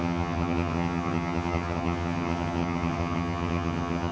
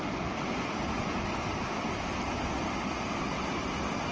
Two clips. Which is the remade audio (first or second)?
first